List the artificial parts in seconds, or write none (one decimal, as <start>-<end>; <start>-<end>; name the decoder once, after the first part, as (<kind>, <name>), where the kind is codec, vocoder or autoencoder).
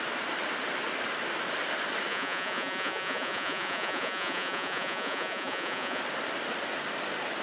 2.1-6.0 (vocoder, Vocos)